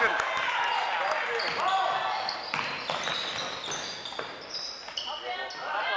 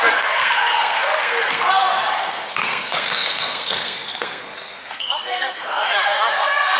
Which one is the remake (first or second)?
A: second